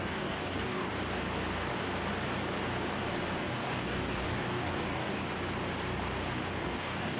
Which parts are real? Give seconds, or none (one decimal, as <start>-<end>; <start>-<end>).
0.9-3.4; 5.2-6.6